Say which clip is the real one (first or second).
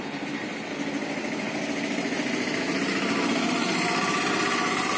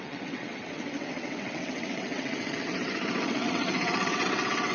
first